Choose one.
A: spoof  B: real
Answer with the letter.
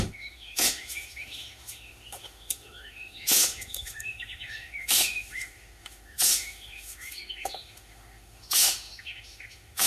A